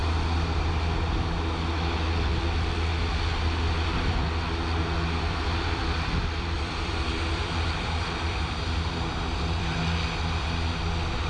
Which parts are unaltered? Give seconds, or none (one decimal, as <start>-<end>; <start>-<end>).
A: 0.0-4.8; 9.8-11.3